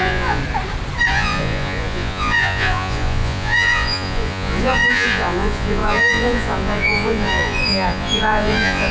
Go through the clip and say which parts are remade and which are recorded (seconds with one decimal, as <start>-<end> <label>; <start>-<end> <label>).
0.0-0.4 remade; 0.4-1.1 recorded; 1.1-8.9 remade